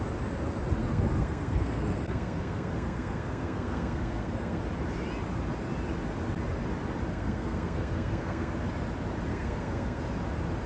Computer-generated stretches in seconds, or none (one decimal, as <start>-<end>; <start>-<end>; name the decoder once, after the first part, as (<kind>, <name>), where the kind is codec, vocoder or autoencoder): 0.8-4.6 (codec, SNAC); 7.1-8.5; 9.3-10.0